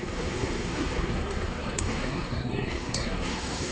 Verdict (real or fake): fake